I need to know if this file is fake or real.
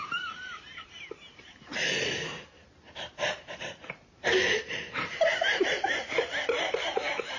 fake